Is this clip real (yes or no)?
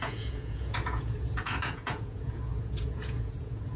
no